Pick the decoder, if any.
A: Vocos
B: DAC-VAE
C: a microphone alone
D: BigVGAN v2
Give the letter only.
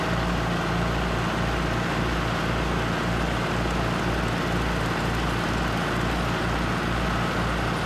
C